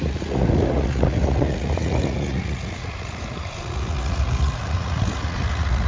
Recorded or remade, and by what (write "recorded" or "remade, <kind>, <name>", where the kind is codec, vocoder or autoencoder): remade, vocoder, Vocos